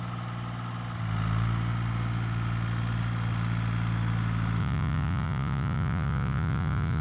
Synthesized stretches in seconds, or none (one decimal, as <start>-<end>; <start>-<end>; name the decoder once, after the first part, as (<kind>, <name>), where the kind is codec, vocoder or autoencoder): 4.6-7.0 (vocoder, Vocos)